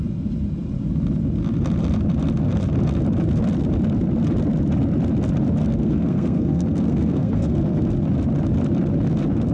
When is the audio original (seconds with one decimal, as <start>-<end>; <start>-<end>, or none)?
0.0-5.6; 7.9-9.5